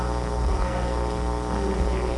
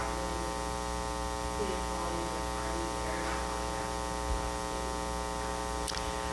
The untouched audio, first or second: second